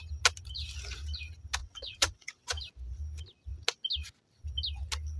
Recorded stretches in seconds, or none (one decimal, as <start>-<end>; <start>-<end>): 0.0-1.6; 2.6-5.2